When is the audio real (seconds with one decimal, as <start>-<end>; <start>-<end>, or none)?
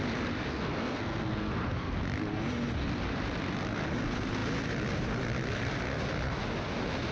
0.0-0.5; 1.9-7.1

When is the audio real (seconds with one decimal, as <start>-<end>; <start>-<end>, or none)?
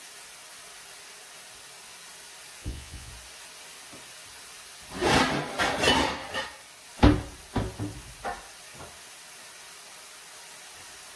0.0-2.6; 3.1-11.2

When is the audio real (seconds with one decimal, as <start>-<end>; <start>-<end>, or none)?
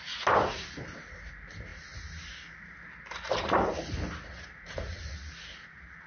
0.0-4.3; 5.0-6.1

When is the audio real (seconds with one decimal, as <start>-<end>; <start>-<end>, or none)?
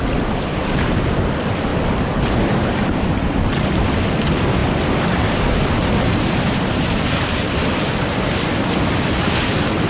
1.7-2.3; 4.6-9.9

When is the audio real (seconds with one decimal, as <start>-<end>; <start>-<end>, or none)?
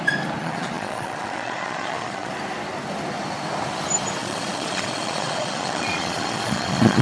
0.0-0.4; 2.3-4.2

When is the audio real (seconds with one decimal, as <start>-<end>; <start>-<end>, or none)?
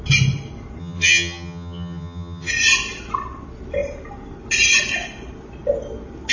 0.0-0.8; 2.5-6.3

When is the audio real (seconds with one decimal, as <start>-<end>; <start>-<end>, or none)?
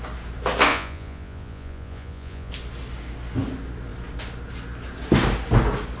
0.0-0.7; 2.5-6.0